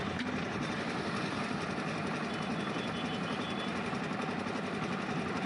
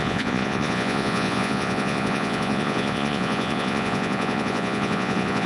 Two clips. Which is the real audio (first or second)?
first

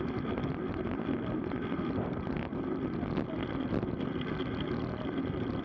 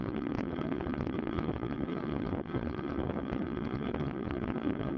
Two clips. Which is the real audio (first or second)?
first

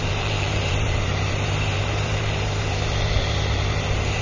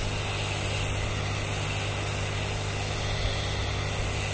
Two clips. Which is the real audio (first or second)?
second